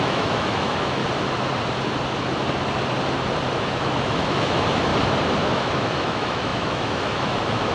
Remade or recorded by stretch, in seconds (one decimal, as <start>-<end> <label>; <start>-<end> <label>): 0.0-1.0 remade; 1.0-3.5 recorded; 3.5-4.9 remade; 4.9-5.4 recorded; 5.4-7.7 remade